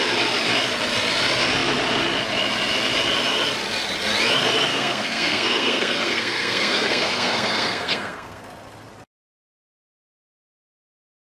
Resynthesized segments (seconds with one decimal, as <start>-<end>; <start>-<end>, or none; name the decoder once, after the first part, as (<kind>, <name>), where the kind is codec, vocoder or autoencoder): 4.7-8.4 (codec, SNAC)